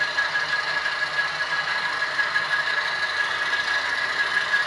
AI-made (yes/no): no